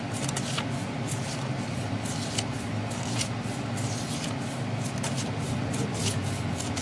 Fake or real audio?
real